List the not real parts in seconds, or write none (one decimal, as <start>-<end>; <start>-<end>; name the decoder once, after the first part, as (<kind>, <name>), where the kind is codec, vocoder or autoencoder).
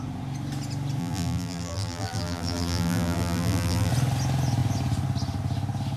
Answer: 1.0-3.9 (vocoder, BigVGAN v2)